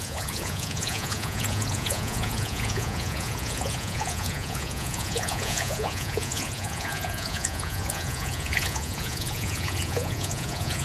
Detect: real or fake fake